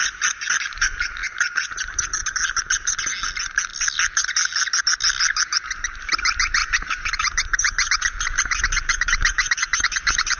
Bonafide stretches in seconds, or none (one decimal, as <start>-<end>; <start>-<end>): 0.0-6.6